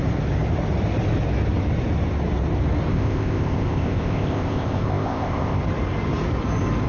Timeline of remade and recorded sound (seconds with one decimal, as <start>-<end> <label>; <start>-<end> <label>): 0.0-2.9 recorded; 2.9-5.6 remade; 5.6-6.9 recorded